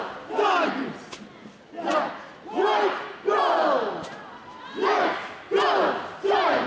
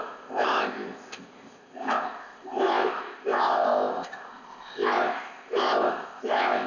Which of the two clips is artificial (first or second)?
second